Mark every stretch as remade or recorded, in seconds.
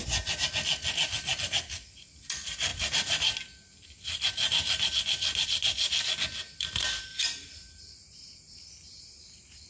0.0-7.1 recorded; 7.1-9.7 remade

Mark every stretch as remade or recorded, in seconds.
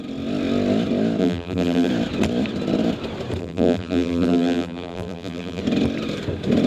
0.0-1.2 recorded; 1.2-1.9 remade; 1.9-3.4 recorded; 3.4-5.6 remade; 5.6-6.7 recorded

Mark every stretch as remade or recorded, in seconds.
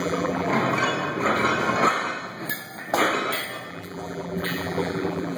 0.0-0.5 remade; 0.5-3.7 recorded; 3.7-5.4 remade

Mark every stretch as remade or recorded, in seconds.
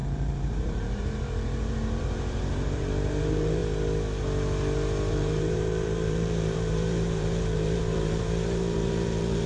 0.0-3.6 remade; 3.6-5.1 recorded; 5.1-9.5 remade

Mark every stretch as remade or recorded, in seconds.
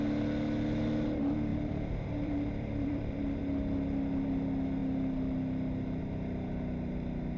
0.0-1.5 recorded; 1.5-3.2 remade; 3.2-7.4 recorded